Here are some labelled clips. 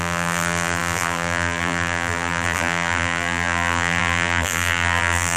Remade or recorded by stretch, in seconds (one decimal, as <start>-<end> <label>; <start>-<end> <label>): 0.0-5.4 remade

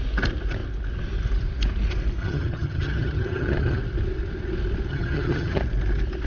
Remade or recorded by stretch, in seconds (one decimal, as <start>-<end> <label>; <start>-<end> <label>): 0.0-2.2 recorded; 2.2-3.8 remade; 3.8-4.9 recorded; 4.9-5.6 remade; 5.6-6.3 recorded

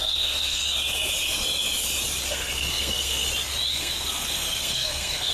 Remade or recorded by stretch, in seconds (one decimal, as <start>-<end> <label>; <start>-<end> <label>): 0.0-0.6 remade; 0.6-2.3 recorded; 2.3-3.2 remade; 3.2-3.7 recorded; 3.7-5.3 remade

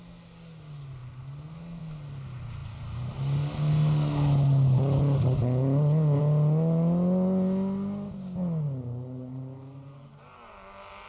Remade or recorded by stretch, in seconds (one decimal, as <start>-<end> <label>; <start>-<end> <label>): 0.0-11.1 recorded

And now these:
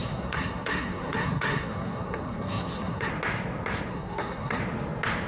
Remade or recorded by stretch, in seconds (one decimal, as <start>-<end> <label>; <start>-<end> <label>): 0.0-3.1 remade; 3.1-3.9 recorded; 3.9-4.6 remade; 4.6-5.3 recorded